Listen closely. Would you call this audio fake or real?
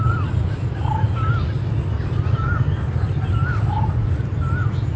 real